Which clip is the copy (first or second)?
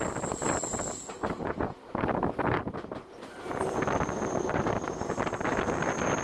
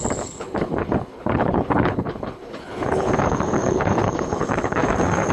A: second